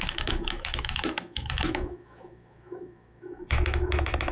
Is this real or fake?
fake